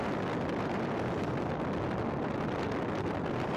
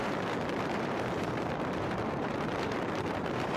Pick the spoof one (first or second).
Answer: second